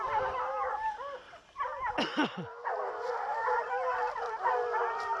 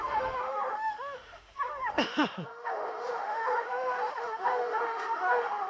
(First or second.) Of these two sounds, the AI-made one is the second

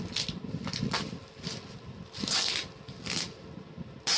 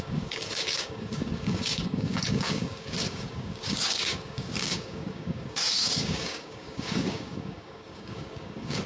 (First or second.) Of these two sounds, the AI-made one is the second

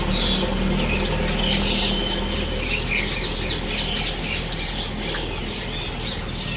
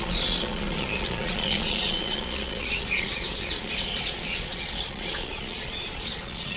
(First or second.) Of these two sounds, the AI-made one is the second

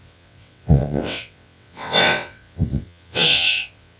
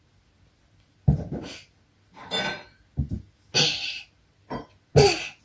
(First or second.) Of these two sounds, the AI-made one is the first